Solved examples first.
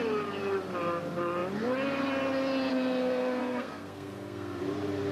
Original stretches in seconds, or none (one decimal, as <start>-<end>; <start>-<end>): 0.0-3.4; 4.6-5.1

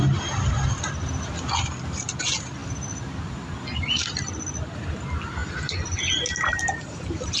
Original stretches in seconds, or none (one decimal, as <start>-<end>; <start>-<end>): 0.0-7.4

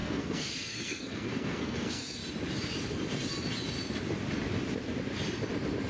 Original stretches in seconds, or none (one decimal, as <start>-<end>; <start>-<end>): 2.2-5.9

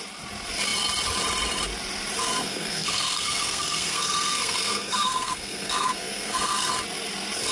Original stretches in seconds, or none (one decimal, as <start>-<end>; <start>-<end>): 0.0-2.2; 6.7-7.5

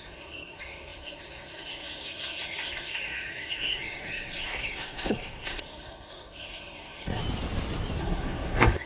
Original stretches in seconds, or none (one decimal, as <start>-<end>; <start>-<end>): 7.2-8.0

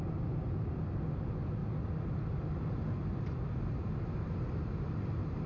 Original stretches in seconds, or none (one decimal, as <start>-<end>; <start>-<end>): 0.0-5.5

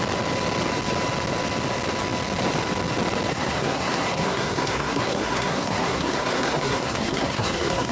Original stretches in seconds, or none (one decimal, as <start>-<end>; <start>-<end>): 0.0-3.3